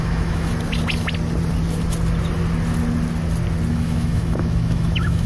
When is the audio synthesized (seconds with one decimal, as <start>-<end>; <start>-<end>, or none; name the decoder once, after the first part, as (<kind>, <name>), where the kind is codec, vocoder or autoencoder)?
0.0-0.5 (autoencoder, DAC-VAE); 3.7-5.3